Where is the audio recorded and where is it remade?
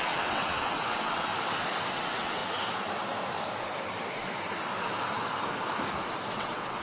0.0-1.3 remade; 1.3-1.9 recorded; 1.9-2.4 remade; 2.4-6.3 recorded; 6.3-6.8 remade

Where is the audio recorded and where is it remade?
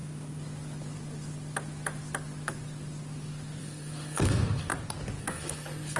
0.0-3.6 recorded; 3.6-4.7 remade; 4.7-5.2 recorded; 5.2-6.0 remade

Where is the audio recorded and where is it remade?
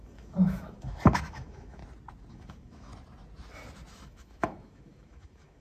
0.0-1.8 remade; 1.8-2.3 recorded; 2.3-2.9 remade; 2.9-3.9 recorded; 3.9-5.6 remade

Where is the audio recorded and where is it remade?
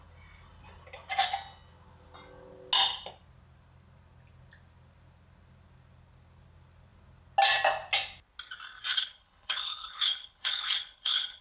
0.0-8.9 recorded; 8.9-11.4 remade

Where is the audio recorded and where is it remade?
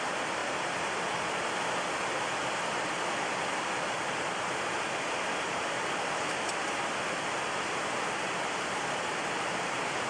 0.0-10.1 recorded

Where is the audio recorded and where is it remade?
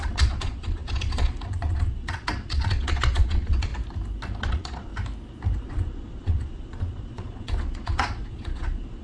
0.0-3.7 remade; 3.7-4.4 recorded; 4.4-4.9 remade; 4.9-5.7 recorded; 5.7-9.0 remade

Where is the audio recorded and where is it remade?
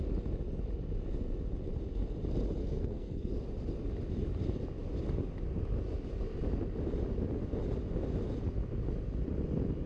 0.0-2.6 recorded; 2.6-3.3 remade; 3.3-9.9 recorded